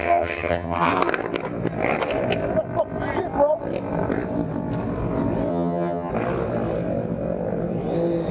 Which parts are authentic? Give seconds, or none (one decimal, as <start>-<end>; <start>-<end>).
0.9-5.5; 6.1-8.3